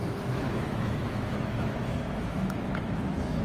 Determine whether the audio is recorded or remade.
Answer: remade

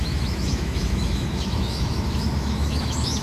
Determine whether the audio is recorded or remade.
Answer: remade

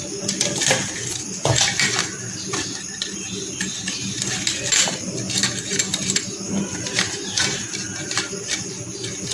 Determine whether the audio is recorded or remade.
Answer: recorded